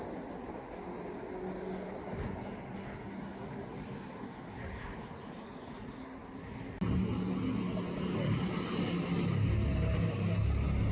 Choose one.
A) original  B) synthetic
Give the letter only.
A